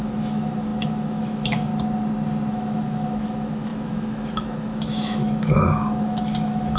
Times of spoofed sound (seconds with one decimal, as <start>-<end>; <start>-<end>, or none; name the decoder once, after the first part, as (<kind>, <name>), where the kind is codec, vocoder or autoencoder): 0.0-1.7 (autoencoder, DAC-VAE); 2.5-6.8

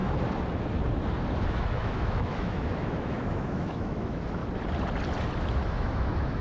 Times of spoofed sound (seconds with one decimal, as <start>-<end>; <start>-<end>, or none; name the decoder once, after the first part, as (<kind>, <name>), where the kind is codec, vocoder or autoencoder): 1.5-4.4 (autoencoder, DAC-VAE); 5.6-6.4